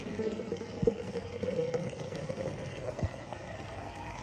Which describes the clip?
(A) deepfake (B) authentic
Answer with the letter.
A